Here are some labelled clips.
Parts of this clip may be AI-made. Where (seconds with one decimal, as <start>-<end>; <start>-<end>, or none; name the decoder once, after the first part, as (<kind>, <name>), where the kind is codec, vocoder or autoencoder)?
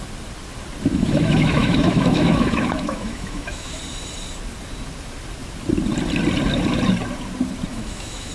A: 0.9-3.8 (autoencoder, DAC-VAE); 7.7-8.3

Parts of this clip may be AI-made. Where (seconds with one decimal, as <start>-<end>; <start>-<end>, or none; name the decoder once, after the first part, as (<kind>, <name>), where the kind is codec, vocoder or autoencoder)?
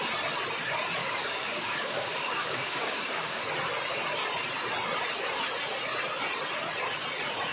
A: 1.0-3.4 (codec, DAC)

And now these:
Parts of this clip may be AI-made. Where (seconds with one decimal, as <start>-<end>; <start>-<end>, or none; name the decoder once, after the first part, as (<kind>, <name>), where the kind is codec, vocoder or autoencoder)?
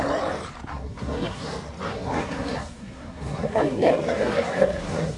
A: 0.7-1.5 (codec, SNAC); 1.9-5.2